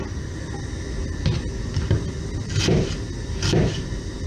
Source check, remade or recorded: recorded